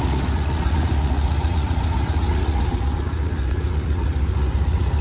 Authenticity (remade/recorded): remade